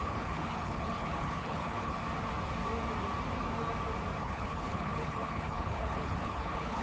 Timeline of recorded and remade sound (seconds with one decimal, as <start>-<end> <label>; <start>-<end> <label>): 0.0-2.0 remade; 2.0-4.2 recorded; 4.2-6.8 remade